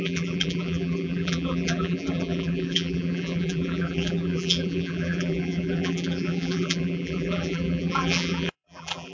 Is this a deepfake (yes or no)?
yes